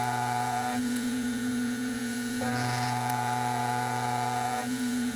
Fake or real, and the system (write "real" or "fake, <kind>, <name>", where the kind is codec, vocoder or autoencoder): fake, vocoder, Vocos